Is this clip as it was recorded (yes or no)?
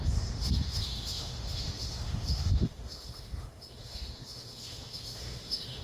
no